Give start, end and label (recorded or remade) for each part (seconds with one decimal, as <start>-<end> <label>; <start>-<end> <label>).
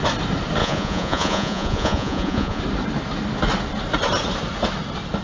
0.0-0.6 recorded; 0.6-2.6 remade; 2.6-5.2 recorded